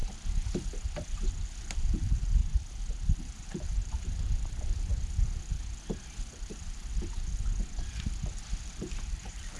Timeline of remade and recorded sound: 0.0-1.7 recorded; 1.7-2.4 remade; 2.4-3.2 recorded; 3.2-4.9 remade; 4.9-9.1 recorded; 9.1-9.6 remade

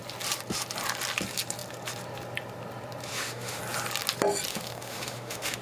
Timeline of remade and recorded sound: 0.0-3.1 recorded; 3.1-3.6 remade; 3.6-4.5 recorded; 4.5-5.6 remade

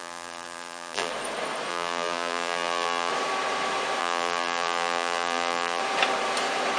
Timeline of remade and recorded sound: 0.0-1.1 remade; 1.1-1.7 recorded; 1.7-3.1 remade; 3.1-4.0 recorded; 4.0-5.8 remade; 5.8-6.8 recorded

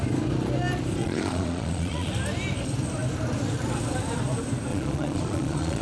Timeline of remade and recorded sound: 0.0-1.0 recorded; 1.0-2.1 remade; 2.1-4.7 recorded; 4.7-5.8 remade